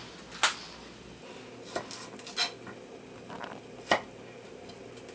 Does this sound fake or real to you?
real